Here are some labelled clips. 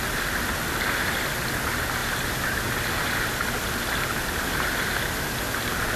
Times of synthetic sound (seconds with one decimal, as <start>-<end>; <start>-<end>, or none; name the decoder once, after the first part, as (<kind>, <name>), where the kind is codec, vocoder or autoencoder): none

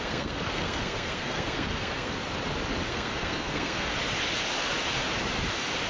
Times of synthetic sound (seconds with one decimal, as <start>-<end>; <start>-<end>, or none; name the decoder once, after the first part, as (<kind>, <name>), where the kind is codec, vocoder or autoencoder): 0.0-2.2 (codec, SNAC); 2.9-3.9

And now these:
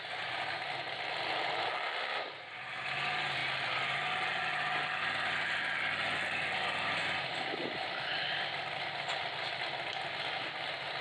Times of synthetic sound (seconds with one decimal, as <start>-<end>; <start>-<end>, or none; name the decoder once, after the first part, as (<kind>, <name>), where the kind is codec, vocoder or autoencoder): none

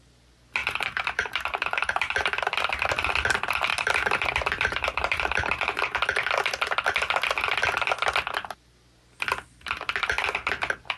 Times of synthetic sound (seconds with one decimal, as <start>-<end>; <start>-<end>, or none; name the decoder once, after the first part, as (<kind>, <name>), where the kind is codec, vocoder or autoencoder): 0.6-3.1 (vocoder, BigVGAN v2); 3.7-5.8